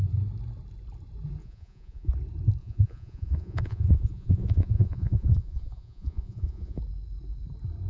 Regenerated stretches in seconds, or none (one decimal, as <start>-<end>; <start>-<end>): 1.4-2.1; 2.6-6.8